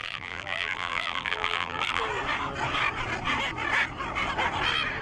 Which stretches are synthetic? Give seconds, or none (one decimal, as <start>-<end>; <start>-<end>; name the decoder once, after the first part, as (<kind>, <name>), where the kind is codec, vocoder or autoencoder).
0.0-2.0 (vocoder, BigVGAN v2)

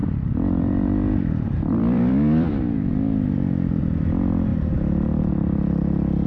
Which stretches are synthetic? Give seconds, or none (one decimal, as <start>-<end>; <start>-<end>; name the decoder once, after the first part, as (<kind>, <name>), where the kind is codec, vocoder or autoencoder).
0.0-2.9 (vocoder, BigVGAN v2); 4.5-5.3

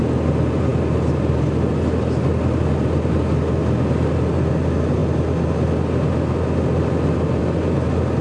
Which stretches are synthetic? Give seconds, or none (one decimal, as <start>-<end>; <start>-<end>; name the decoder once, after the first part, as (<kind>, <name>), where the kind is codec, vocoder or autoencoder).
none